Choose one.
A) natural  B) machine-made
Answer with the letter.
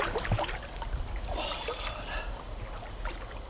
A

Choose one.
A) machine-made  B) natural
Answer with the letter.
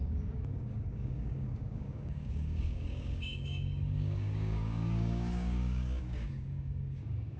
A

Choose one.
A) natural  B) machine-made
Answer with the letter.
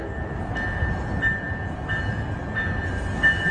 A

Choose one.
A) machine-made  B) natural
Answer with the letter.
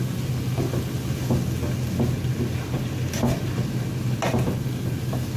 B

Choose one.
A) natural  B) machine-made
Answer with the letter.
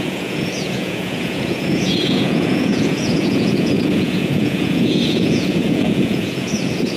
B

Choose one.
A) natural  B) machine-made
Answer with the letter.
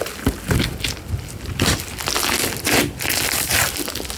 A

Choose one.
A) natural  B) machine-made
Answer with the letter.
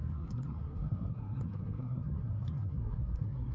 B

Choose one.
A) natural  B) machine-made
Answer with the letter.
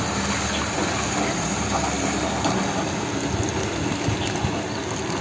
A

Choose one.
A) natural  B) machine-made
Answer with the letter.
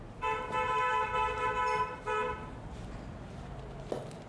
A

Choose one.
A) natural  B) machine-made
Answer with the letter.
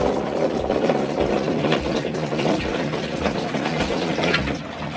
B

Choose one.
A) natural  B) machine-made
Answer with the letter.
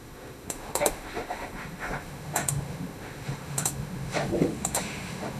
B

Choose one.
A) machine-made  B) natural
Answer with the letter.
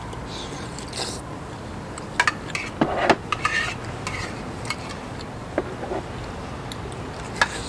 B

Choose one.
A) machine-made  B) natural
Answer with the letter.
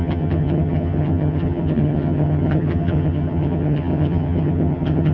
A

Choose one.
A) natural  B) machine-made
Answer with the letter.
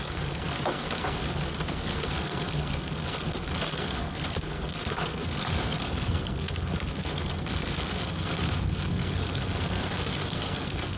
B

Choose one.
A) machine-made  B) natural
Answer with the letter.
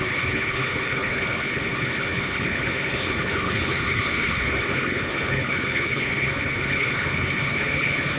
A